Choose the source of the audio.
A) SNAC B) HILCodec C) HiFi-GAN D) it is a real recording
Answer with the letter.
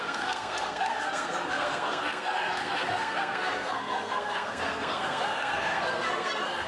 A